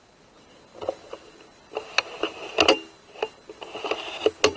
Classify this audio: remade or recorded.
recorded